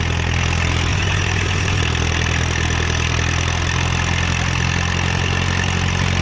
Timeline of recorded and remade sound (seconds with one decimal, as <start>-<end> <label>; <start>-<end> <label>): 0.0-0.9 recorded; 0.9-1.8 remade; 1.8-6.2 recorded